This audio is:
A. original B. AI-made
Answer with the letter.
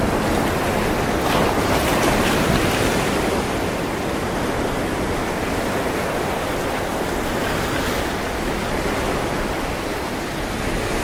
A